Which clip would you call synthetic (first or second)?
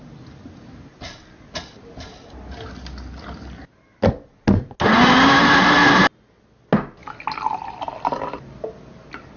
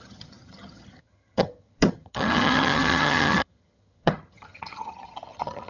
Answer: second